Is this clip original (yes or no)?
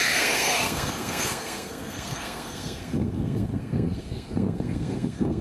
no